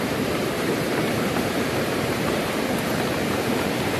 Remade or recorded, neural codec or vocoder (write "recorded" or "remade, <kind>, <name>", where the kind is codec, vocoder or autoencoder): remade, vocoder, BigVGAN v2